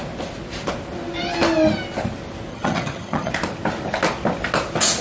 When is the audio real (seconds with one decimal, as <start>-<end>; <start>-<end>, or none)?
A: 0.0-2.5; 3.3-5.0